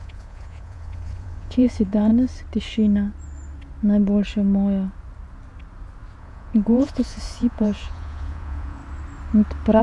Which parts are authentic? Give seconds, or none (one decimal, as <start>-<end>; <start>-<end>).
2.1-6.2; 8.8-9.8